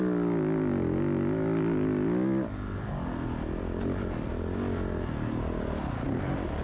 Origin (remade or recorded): recorded